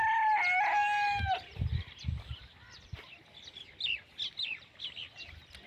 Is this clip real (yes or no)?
yes